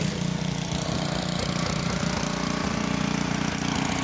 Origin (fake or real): fake